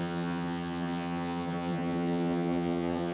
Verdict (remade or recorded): remade